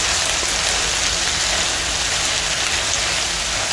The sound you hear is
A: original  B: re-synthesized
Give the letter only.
A